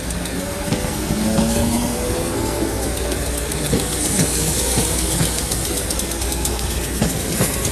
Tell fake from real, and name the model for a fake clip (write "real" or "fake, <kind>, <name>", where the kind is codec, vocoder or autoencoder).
fake, codec, SNAC